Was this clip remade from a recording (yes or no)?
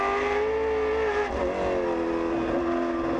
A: no